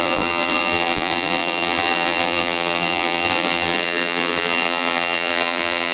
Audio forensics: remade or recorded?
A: remade